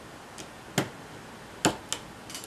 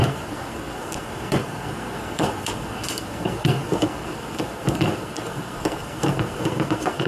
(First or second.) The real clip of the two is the first